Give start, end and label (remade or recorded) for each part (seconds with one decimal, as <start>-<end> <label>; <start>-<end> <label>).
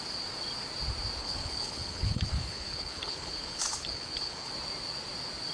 0.0-1.2 recorded; 1.2-4.5 remade; 4.5-5.5 recorded